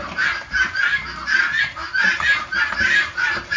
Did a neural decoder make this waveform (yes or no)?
no